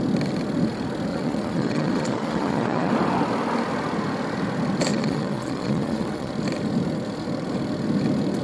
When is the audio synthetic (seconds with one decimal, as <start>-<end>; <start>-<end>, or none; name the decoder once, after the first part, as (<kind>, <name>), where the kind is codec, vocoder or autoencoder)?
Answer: 1.1-2.9 (vocoder, Vocos); 4.9-6.3